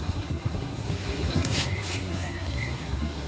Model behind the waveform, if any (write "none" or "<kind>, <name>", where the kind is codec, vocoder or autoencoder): codec, SNAC